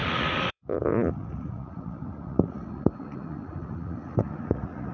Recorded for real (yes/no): no